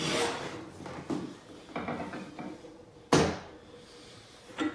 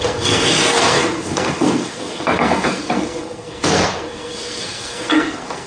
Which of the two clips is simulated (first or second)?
second